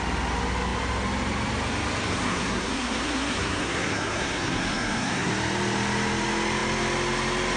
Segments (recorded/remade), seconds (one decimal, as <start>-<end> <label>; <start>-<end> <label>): 0.0-2.1 recorded; 2.1-5.3 remade; 5.3-7.6 recorded